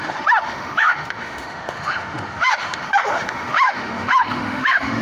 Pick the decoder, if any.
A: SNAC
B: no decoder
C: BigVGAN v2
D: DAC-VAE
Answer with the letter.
D